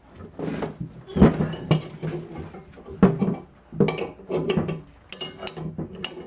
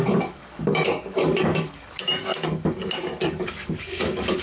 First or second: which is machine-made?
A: second